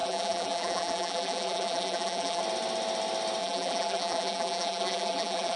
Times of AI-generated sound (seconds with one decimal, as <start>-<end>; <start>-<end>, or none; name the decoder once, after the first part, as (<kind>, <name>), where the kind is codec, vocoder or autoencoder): 0.0-2.4 (vocoder, BigVGAN v2); 3.4-5.6